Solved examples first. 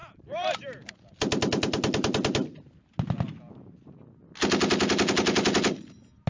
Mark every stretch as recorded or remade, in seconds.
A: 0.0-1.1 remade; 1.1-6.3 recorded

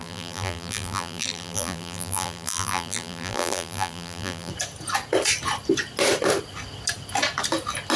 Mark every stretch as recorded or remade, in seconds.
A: 0.0-4.5 remade; 4.5-8.0 recorded

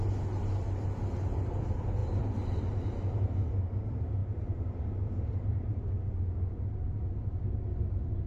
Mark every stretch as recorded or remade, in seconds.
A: 0.0-4.2 recorded; 4.2-5.8 remade; 5.8-8.3 recorded